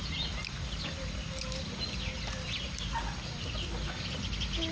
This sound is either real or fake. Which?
real